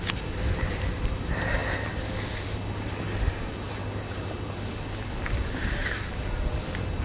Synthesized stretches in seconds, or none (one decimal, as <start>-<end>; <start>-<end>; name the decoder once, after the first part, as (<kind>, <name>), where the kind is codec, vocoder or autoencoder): none